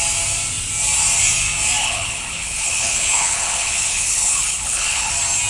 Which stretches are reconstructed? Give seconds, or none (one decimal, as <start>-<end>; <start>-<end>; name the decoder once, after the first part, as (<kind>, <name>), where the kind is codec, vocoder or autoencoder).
1.8-5.1 (codec, HILCodec)